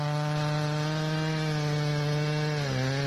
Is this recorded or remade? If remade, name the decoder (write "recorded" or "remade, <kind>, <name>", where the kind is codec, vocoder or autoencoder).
recorded